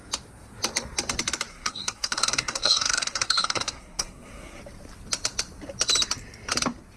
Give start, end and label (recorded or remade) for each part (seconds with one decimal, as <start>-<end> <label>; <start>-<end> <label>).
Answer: 0.0-1.5 recorded; 1.5-4.6 remade; 4.6-7.0 recorded